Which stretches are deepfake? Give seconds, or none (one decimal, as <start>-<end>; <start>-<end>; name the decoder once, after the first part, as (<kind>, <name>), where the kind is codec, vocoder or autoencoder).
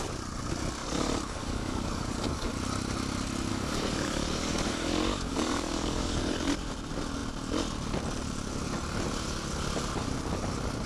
0.8-2.5 (codec, DAC); 3.5-6.5